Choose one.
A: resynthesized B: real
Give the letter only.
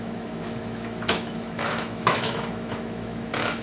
A